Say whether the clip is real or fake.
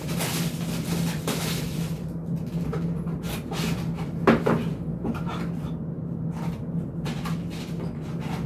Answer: real